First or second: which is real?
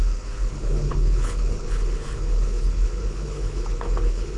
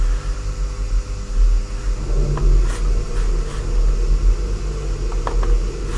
second